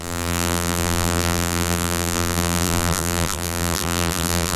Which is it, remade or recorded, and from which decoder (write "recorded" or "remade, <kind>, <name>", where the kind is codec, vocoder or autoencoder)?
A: remade, vocoder, BigVGAN v2